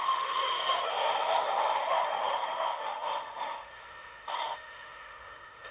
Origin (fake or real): fake